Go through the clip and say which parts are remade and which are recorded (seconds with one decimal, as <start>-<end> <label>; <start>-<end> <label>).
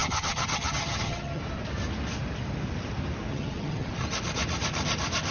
0.0-1.4 remade; 1.4-3.3 recorded; 3.3-3.9 remade; 3.9-5.3 recorded